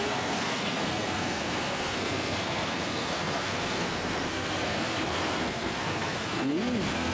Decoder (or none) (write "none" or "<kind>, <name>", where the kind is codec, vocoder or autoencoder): codec, SNAC